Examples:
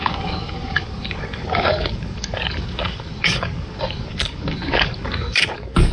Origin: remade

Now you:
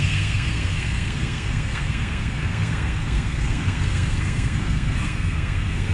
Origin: remade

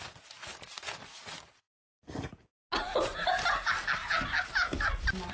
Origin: recorded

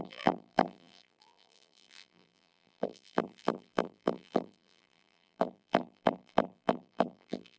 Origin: remade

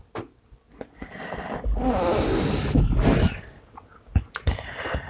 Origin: recorded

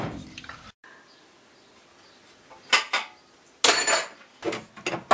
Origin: recorded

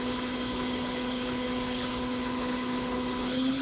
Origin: remade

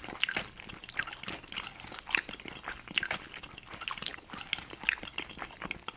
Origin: recorded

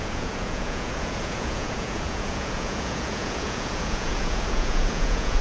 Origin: remade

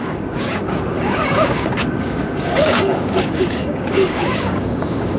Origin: remade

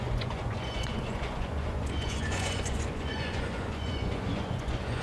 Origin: remade